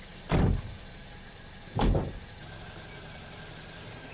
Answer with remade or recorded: remade